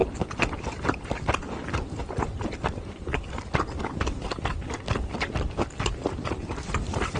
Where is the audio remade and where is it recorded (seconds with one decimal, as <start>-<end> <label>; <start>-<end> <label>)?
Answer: 0.0-7.2 recorded